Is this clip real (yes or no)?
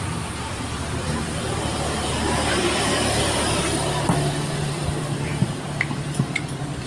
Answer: no